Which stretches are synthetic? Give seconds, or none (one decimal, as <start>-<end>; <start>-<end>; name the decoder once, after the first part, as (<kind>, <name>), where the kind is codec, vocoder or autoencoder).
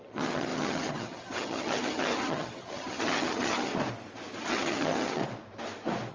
0.0-3.7 (vocoder, HiFi-GAN); 4.5-5.2